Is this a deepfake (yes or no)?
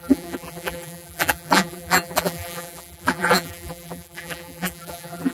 yes